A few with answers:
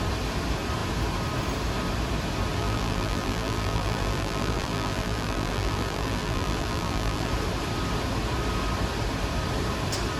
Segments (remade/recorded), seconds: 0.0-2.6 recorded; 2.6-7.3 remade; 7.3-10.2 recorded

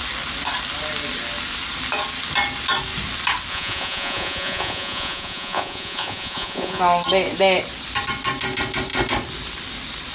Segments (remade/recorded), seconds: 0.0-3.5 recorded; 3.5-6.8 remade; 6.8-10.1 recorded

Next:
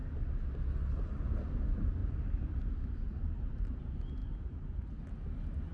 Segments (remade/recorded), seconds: 0.0-2.0 recorded; 2.0-3.8 remade; 3.8-4.2 recorded; 4.2-5.0 remade; 5.0-5.7 recorded